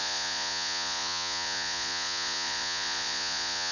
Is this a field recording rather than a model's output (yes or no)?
no